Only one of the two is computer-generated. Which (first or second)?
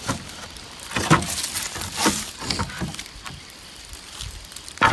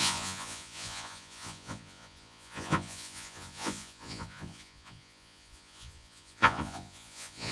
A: second